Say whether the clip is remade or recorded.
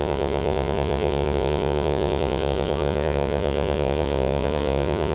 remade